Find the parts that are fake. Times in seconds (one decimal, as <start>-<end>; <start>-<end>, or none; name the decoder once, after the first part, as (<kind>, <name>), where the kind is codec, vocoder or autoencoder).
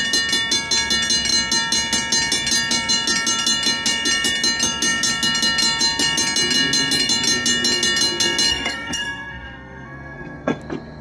8.5-10.6 (codec, SNAC)